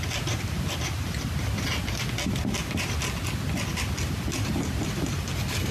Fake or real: real